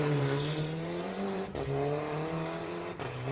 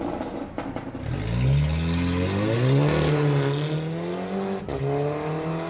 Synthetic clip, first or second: first